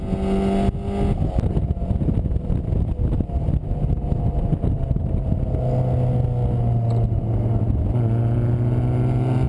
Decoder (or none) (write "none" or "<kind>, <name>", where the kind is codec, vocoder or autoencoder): none